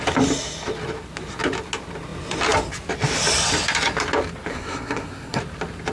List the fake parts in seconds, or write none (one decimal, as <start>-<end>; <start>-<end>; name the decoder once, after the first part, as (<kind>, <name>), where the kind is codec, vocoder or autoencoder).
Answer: 4.5-5.4 (codec, SNAC)